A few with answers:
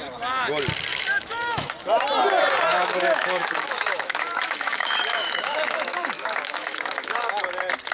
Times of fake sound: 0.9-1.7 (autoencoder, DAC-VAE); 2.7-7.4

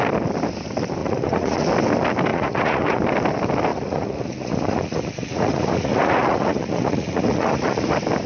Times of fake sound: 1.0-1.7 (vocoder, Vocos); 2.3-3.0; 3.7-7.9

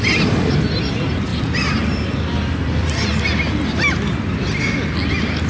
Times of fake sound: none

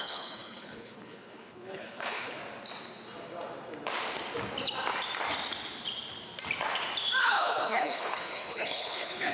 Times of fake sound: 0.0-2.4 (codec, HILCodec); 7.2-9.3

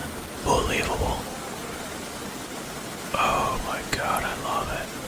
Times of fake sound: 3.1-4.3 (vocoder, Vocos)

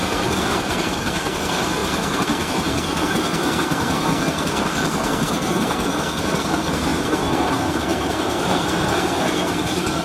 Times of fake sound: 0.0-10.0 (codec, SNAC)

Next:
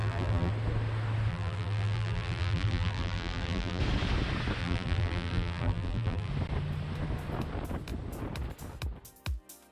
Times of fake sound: 0.0-0.5 (vocoder, BigVGAN v2); 1.3-3.8; 4.6-6.3